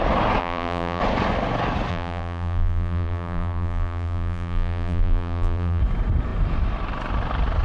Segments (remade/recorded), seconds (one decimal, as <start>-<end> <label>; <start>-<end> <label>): 0.0-0.4 recorded; 0.4-1.0 remade; 1.0-1.9 recorded; 1.9-5.8 remade; 5.8-7.6 recorded